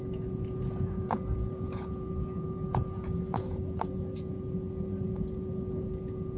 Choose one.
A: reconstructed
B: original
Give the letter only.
A